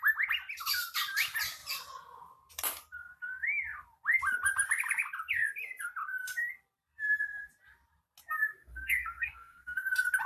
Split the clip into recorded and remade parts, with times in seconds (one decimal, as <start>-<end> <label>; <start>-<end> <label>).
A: 0.0-8.6 recorded; 8.6-9.9 remade; 9.9-10.3 recorded